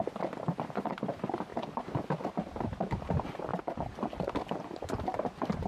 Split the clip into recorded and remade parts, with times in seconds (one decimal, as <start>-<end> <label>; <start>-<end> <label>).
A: 0.0-1.5 remade; 1.5-2.2 recorded; 2.2-3.5 remade; 3.5-4.5 recorded; 4.5-5.7 remade